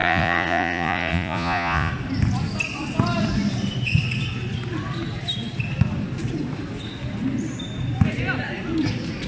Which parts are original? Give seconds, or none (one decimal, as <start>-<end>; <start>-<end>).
1.9-9.3